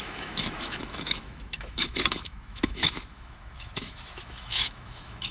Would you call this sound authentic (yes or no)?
no